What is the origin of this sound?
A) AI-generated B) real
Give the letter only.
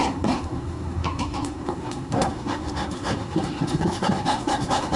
A